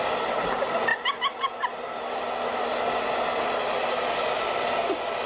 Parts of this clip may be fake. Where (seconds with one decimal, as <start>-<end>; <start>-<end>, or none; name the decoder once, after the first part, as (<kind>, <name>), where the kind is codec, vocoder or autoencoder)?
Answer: none

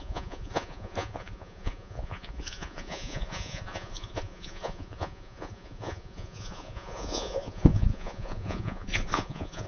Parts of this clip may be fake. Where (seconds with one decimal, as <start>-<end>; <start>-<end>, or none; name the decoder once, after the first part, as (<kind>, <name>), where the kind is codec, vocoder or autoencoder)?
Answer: 0.0-9.7 (vocoder, Vocos)

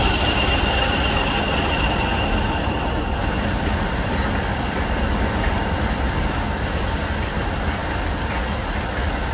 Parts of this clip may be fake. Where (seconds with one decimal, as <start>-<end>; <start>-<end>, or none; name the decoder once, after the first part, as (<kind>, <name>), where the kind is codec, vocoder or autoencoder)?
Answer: none

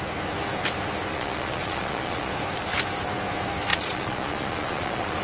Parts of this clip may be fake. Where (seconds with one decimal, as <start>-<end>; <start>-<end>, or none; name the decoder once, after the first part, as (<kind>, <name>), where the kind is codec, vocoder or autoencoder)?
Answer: 1.1-2.3 (vocoder, Vocos); 3.7-5.2

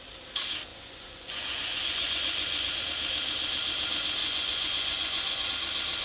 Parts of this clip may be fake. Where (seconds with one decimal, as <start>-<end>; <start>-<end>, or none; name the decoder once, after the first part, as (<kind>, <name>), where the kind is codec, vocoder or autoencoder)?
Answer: 0.7-2.8 (vocoder, Vocos); 4.2-5.5